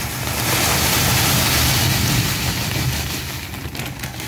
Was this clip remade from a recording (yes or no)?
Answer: no